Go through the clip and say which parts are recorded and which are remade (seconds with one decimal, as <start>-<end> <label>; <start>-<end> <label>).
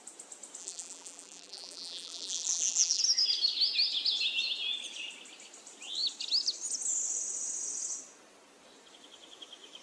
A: 0.0-0.6 recorded; 0.6-3.0 remade; 3.0-9.8 recorded